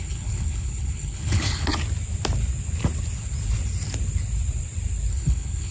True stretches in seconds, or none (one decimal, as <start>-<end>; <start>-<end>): 1.7-5.1